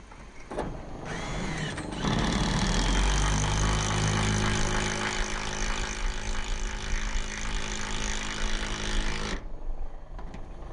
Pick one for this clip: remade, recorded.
recorded